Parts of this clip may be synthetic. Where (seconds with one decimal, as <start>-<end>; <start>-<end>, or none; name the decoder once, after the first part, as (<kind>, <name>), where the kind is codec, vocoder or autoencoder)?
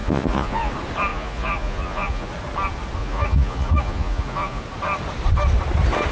0.0-0.7 (vocoder, Vocos); 1.1-2.3; 3.0-4.6